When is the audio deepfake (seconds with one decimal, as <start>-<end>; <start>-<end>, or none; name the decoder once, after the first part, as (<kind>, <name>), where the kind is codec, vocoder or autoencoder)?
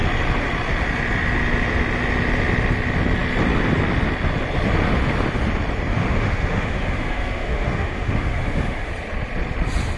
6.0-8.9 (autoencoder, DAC-VAE)